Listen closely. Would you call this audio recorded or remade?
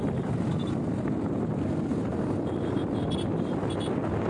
recorded